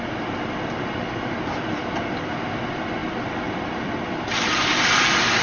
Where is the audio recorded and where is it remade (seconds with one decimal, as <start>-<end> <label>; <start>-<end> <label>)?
0.0-5.4 recorded